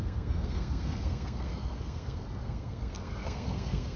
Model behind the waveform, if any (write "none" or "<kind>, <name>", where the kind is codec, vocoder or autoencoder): codec, SNAC